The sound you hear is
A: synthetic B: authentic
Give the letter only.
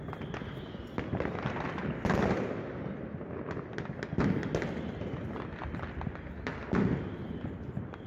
B